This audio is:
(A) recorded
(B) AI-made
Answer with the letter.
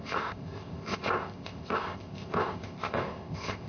B